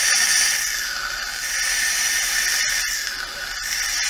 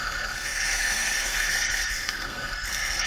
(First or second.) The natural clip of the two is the first